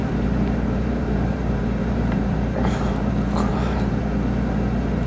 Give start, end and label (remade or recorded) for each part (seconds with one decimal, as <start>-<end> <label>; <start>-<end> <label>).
0.0-3.1 remade; 3.1-3.5 recorded; 3.5-4.0 remade; 4.0-5.1 recorded